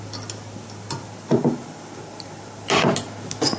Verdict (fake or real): real